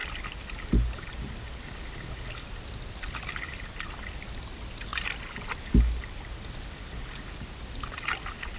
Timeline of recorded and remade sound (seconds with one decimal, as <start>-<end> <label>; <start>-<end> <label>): 0.0-8.6 recorded